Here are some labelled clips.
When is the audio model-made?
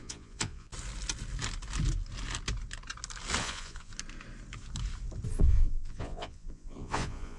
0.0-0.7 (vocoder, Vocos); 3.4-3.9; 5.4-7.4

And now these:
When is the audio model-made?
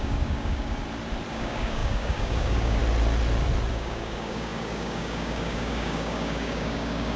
0.0-0.8 (codec, DAC); 1.3-2.8; 3.7-7.2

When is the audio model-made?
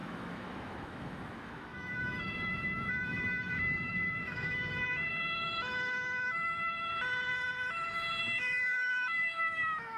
0.0-6.9 (autoencoder, DAC-VAE); 8.2-10.0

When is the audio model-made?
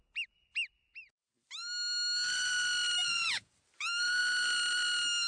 3.0-3.5 (vocoder, Vocos)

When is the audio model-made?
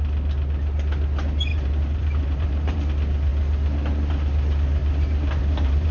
1.5-2.8 (vocoder, BigVGAN v2); 4.8-5.9